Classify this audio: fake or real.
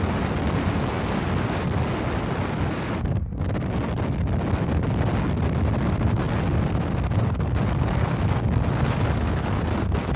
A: real